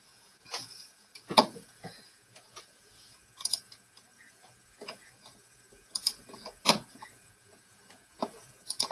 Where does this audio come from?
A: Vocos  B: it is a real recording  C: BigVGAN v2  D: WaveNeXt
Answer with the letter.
A